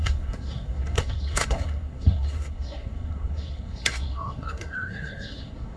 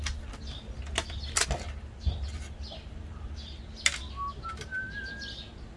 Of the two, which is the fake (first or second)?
first